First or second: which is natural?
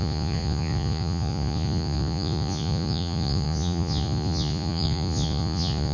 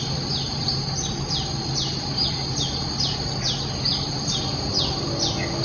second